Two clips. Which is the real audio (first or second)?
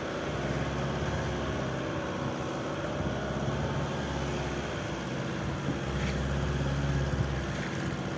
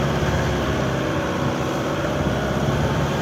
first